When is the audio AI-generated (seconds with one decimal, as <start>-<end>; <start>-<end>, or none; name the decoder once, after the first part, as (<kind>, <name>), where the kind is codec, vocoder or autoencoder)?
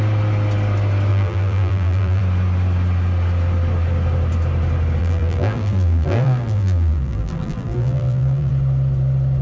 1.1-2.2 (vocoder, BigVGAN v2); 5.0-8.5